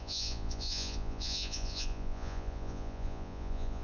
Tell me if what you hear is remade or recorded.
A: remade